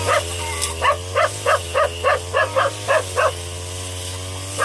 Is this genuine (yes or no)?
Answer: yes